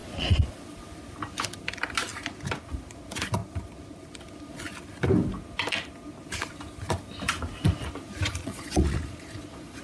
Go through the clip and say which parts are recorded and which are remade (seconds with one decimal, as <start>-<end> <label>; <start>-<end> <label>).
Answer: 0.0-0.5 remade; 0.5-8.4 recorded; 8.4-9.8 remade